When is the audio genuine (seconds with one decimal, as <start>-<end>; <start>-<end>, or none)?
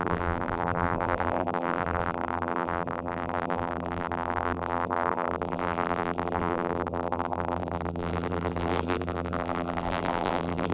none